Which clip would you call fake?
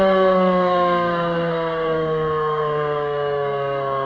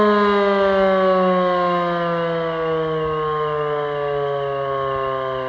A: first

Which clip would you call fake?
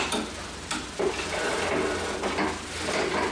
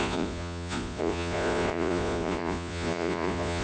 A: second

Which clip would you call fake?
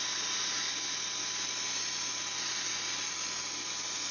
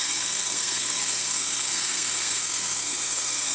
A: second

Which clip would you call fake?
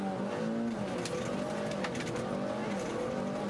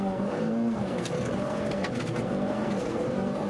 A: second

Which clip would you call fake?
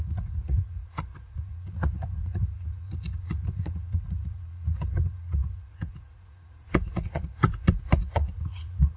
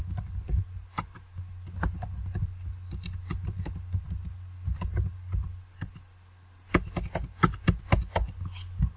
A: first